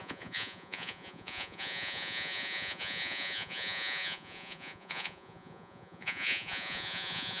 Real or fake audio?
fake